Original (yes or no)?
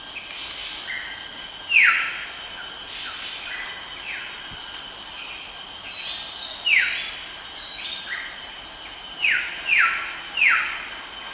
yes